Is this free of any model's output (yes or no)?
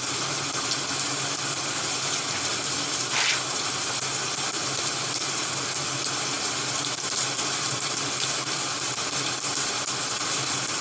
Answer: yes